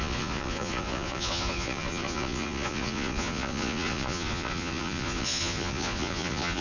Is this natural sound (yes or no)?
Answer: no